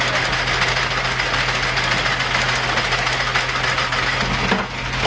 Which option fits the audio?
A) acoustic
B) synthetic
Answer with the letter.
A